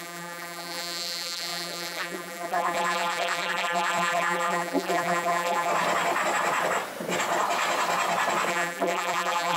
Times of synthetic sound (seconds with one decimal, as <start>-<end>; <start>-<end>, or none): 0.0-5.7; 8.5-9.6